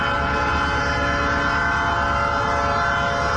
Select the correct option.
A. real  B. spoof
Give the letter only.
A